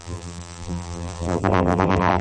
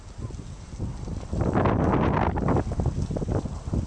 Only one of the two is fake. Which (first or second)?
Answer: first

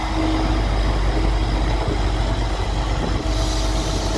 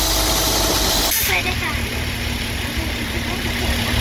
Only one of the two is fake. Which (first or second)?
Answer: second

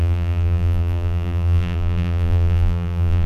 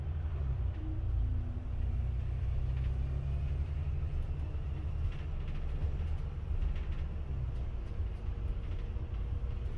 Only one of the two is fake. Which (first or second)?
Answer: first